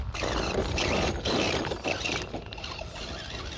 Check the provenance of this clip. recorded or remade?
recorded